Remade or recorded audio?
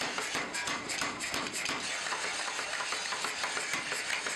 recorded